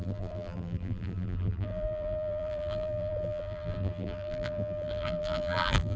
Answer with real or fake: fake